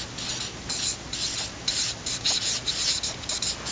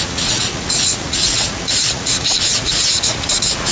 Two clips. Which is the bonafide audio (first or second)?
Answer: first